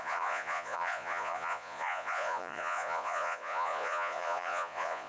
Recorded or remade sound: remade